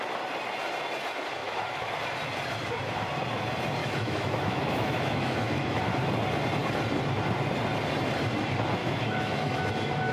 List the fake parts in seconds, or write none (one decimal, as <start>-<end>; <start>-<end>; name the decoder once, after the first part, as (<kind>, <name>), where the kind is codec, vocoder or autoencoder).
1.4-1.9 (autoencoder, DAC-VAE); 3.8-5.8; 8.8-9.7